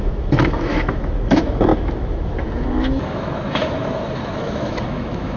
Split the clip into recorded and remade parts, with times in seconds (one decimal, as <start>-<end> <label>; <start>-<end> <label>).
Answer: 0.0-5.4 remade